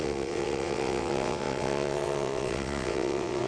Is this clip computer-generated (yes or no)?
yes